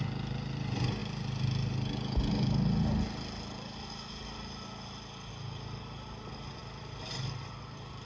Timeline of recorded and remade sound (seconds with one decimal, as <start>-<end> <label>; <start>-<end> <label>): 0.0-6.6 recorded; 6.6-8.1 remade